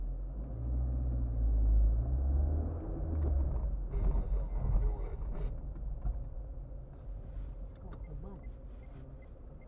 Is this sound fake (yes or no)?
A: no